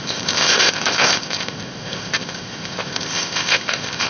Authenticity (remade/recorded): remade